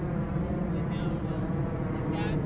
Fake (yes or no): no